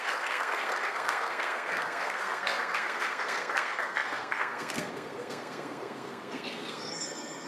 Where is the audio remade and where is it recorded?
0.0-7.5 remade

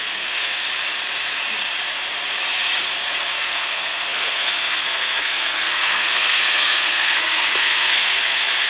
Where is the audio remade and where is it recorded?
0.0-0.6 remade; 0.6-3.2 recorded; 3.2-8.7 remade

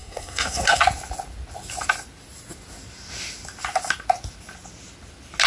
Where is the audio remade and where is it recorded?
0.0-0.8 remade; 0.8-5.5 recorded

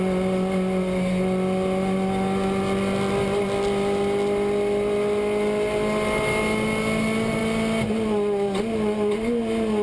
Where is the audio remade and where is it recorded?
0.0-9.8 recorded

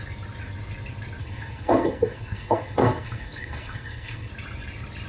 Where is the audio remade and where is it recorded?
0.0-1.2 recorded; 1.2-4.3 remade; 4.3-5.1 recorded

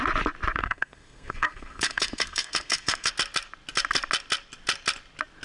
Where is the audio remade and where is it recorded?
0.0-0.6 recorded; 0.6-3.1 remade; 3.1-5.4 recorded

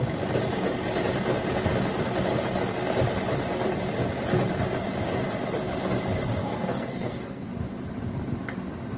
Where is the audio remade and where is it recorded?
0.0-6.4 recorded; 6.4-7.5 remade; 7.5-9.0 recorded

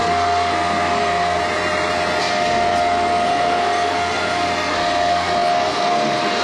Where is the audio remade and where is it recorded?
0.0-1.4 remade; 1.4-2.2 recorded; 2.2-6.4 remade